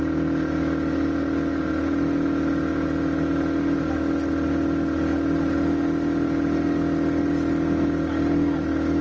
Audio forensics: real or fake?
real